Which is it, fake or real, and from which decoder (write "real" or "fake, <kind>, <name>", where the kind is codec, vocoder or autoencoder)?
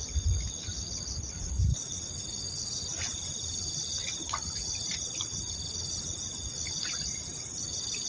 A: real